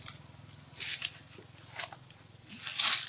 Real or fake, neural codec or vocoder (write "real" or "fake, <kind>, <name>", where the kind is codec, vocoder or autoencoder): real